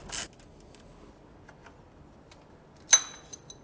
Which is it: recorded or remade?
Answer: recorded